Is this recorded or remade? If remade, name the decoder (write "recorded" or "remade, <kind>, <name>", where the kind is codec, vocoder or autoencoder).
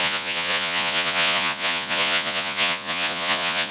remade, vocoder, Vocos